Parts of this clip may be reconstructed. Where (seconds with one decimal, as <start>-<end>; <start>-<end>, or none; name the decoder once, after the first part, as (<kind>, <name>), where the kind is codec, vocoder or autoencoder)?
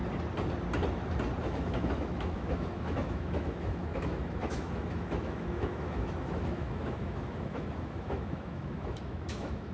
1.4-9.7 (autoencoder, DAC-VAE)